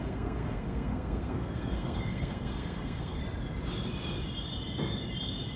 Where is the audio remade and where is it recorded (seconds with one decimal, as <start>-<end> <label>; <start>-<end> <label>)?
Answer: 0.0-3.2 remade; 3.2-5.6 recorded